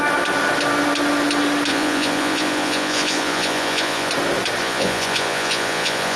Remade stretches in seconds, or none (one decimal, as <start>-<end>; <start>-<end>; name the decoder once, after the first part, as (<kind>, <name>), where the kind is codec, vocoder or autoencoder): 1.7-4.1 (vocoder, Vocos); 4.6-6.2